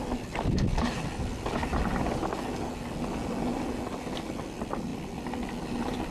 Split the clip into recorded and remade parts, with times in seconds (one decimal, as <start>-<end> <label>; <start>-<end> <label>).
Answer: 0.0-6.1 recorded